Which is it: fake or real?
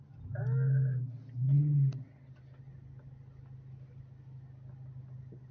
real